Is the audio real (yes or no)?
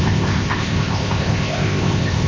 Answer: no